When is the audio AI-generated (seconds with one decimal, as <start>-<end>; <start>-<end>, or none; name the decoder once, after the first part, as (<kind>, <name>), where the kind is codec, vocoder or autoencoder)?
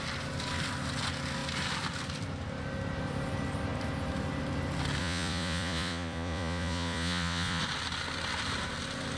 5.0-7.6 (vocoder, Vocos)